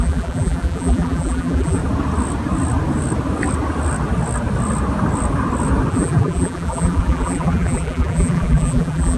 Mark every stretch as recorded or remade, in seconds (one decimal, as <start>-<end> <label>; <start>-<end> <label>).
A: 0.0-1.8 remade; 1.8-5.9 recorded; 5.9-9.2 remade

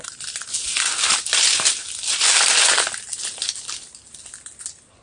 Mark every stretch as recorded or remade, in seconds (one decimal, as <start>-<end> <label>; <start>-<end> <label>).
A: 0.0-5.0 recorded